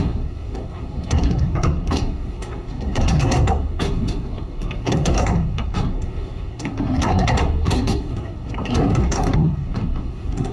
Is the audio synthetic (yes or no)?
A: yes